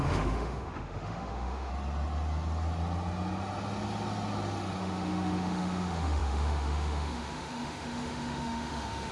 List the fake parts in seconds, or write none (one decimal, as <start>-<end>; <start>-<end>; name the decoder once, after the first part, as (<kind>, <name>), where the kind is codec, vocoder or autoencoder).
0.0-1.7 (autoencoder, DAC-VAE); 4.8-9.1